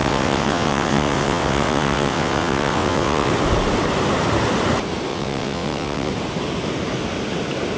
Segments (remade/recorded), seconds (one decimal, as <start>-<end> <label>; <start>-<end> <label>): 0.0-3.3 remade; 3.3-5.1 recorded; 5.1-6.1 remade; 6.1-7.8 recorded